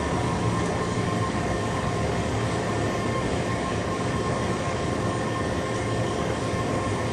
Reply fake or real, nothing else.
fake